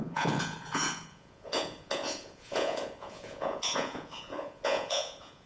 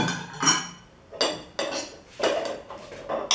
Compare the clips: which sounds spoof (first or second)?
first